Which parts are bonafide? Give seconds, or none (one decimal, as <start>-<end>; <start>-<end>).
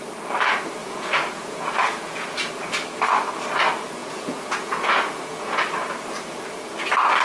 0.0-0.8; 2.5-4.0; 5.6-7.2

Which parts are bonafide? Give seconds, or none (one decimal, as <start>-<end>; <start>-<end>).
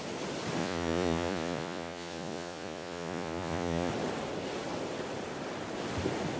0.0-0.6; 3.9-6.4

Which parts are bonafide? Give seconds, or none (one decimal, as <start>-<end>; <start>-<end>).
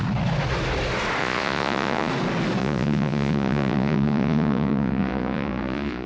0.0-1.2; 2.1-2.6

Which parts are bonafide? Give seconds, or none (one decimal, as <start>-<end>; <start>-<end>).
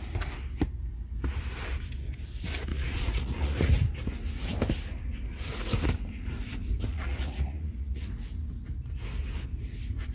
0.0-2.7; 3.7-6.9; 8.1-10.1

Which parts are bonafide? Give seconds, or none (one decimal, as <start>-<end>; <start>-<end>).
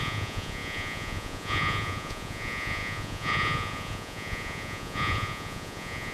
none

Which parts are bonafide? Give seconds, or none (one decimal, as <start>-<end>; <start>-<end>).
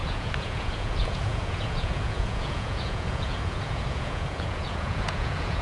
none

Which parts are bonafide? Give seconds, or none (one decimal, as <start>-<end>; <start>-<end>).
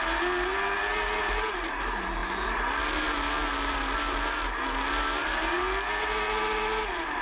0.0-7.2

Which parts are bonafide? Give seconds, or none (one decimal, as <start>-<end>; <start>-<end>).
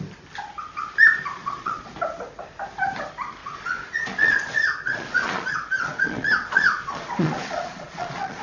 0.0-1.3; 1.9-3.4